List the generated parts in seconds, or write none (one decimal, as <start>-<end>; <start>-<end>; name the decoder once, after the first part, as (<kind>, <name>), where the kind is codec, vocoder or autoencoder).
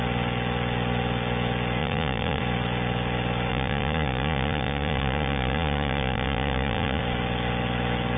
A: 1.8-2.4 (vocoder, Vocos); 3.5-7.0